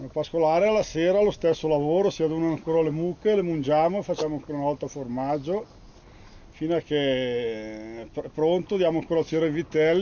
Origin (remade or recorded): recorded